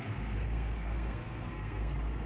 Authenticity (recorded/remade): remade